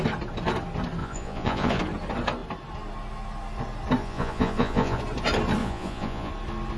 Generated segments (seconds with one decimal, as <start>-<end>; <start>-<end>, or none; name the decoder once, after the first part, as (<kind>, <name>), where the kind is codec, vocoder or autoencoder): 1.0-1.8 (vocoder, Vocos); 4.0-5.0; 5.6-6.3